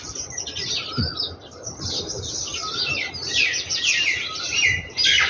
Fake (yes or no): no